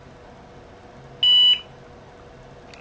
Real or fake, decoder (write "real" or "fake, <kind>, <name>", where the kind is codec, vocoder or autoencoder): real